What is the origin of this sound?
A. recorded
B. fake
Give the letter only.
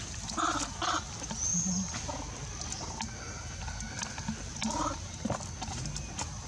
A